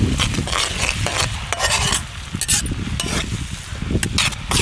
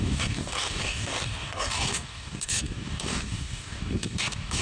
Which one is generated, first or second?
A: second